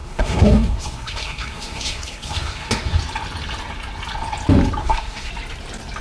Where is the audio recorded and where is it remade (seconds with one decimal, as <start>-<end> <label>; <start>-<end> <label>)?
0.0-3.0 remade; 3.0-4.8 recorded; 4.8-5.3 remade; 5.3-6.0 recorded